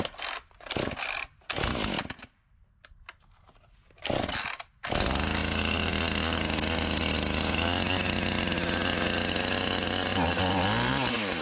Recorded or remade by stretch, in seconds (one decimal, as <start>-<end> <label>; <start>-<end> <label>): 0.0-5.4 recorded; 5.4-5.9 remade; 5.9-11.4 recorded